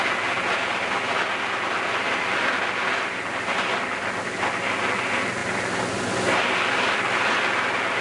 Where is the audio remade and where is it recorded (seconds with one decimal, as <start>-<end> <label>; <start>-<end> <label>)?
0.0-8.0 recorded